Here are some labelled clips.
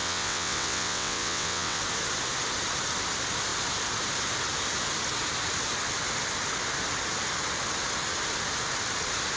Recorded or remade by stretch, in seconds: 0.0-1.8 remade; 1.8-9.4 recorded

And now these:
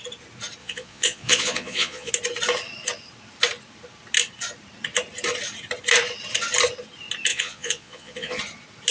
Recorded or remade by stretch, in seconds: 0.0-0.6 recorded; 0.6-2.1 remade; 2.1-7.3 recorded; 7.3-8.4 remade; 8.4-8.9 recorded

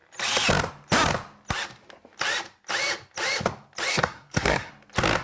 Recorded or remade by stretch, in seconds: 0.0-3.9 recorded; 3.9-4.7 remade; 4.7-5.2 recorded

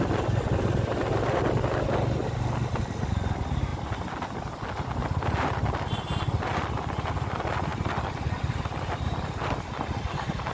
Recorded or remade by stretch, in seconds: 0.0-10.5 recorded

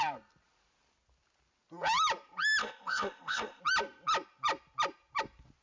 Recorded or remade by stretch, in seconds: 0.0-2.6 recorded; 2.6-3.6 remade; 3.6-5.6 recorded